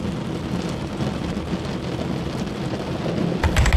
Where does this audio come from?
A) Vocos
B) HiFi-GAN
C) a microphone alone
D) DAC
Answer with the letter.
C